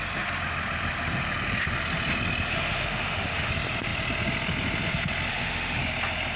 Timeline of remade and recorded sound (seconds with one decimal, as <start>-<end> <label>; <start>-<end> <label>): 0.0-2.5 recorded; 2.5-3.5 remade; 3.5-5.3 recorded; 5.3-5.8 remade; 5.8-6.4 recorded